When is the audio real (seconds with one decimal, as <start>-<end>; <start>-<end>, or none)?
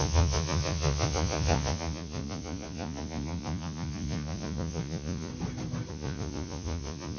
5.3-5.9